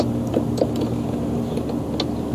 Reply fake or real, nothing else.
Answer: real